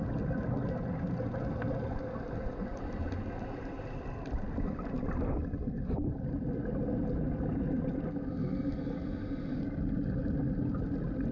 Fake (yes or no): no